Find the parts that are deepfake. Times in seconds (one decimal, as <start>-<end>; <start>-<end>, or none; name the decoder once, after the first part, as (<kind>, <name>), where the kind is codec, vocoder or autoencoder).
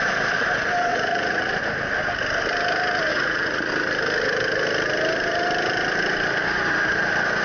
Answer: 0.9-1.6 (vocoder, Vocos); 3.1-3.7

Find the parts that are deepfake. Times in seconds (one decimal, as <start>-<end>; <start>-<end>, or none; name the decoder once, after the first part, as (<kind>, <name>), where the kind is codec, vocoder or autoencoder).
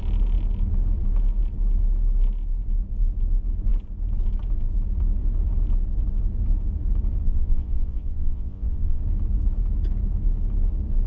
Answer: 7.2-9.0 (vocoder, Vocos)